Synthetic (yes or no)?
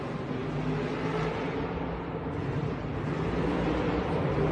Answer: no